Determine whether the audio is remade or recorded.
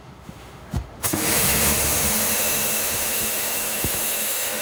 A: remade